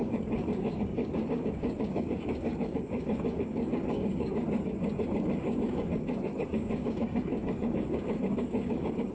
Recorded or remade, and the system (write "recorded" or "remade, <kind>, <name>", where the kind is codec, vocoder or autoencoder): remade, codec, DAC